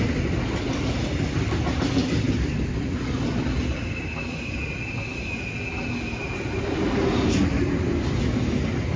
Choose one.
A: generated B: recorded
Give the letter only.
B